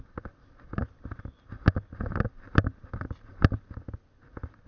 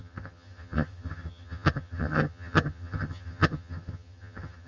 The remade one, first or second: second